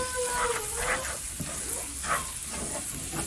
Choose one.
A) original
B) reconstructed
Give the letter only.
A